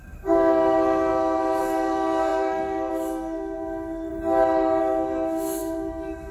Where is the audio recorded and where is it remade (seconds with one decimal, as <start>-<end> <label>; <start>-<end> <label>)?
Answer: 0.0-4.1 remade; 4.1-4.8 recorded; 4.8-6.3 remade